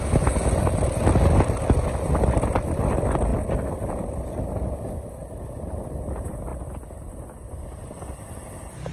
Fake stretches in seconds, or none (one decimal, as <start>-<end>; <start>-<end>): none